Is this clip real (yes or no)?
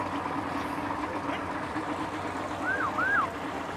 yes